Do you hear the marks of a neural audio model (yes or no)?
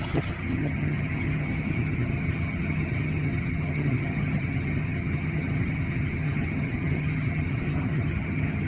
yes